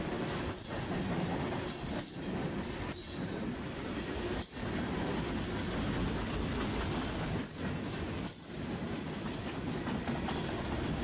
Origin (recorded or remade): recorded